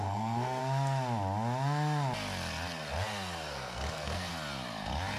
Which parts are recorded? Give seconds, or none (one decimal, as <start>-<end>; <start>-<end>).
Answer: 0.6-3.5; 4.3-5.2